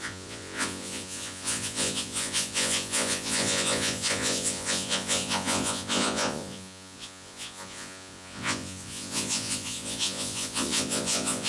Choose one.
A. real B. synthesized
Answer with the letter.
B